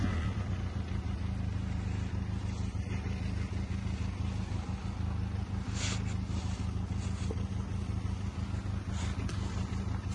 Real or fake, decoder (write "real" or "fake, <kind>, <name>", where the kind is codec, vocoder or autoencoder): real